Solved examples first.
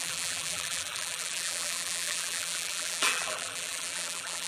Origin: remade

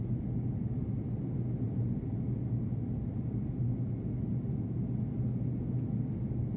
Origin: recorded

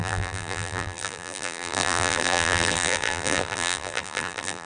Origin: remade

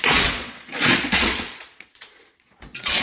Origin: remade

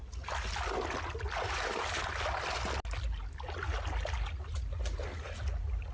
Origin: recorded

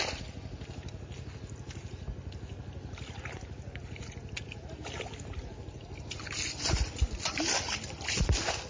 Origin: recorded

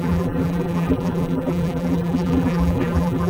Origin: remade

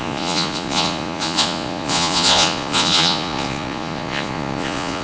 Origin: remade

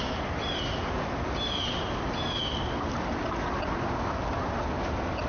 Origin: recorded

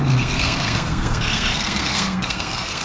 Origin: remade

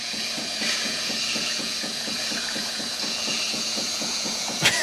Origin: remade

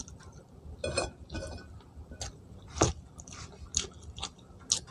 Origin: recorded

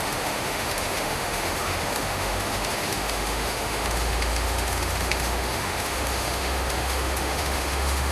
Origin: remade